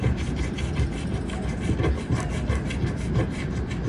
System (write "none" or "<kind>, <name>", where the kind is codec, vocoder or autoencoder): none